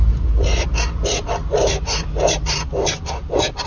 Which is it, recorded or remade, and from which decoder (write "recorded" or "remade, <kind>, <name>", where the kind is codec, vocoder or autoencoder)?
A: remade, vocoder, BigVGAN v2